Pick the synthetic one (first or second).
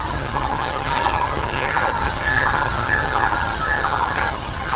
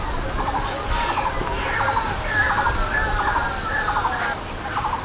first